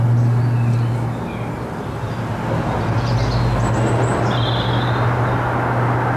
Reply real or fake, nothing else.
real